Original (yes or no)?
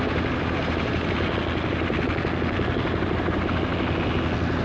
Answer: yes